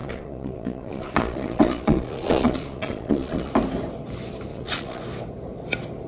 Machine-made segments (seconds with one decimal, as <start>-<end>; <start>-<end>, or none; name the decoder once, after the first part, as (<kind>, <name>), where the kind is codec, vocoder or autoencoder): 0.0-3.5 (vocoder, Vocos); 4.5-5.0